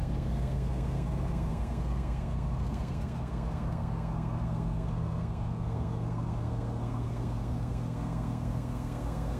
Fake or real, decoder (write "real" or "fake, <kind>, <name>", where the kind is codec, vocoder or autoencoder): fake, codec, SNAC